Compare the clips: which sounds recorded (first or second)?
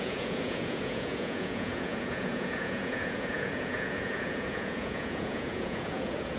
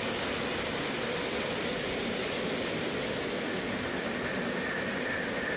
second